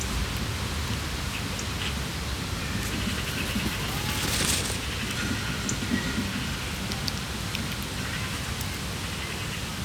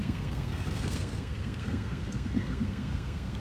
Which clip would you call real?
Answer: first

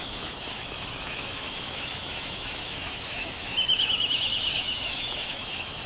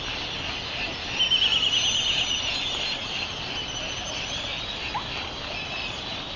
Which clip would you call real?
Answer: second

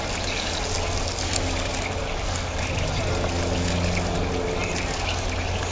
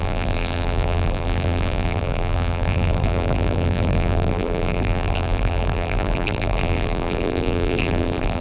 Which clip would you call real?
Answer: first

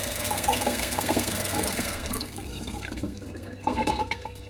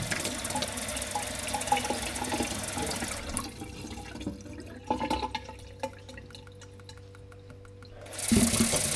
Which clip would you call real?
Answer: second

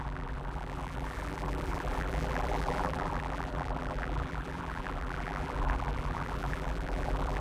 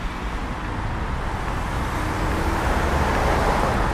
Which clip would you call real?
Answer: second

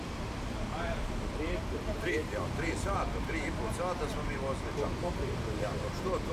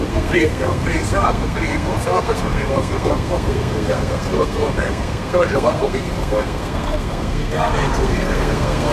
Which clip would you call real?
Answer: first